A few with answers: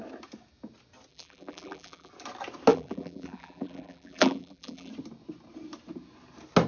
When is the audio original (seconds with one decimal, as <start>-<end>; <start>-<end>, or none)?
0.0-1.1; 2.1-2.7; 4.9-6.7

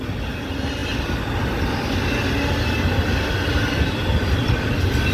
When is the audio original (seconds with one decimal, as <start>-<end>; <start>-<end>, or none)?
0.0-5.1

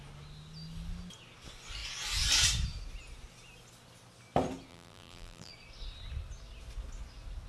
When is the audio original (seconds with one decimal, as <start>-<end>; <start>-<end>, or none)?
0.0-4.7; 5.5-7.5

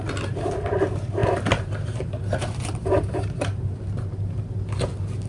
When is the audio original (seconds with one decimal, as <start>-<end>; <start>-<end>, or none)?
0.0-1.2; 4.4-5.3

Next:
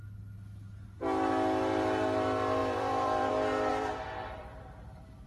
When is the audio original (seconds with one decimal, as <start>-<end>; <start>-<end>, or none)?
0.0-2.6; 3.3-3.7

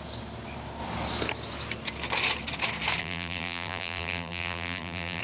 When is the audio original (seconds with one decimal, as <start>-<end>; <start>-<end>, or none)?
0.0-3.0

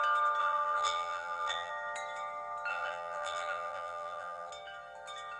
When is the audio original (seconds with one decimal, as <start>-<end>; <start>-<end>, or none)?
0.0-0.4; 1.7-2.7; 4.5-5.4

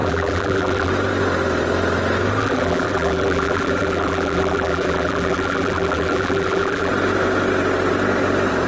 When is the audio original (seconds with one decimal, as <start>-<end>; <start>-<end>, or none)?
0.9-2.4; 6.9-8.7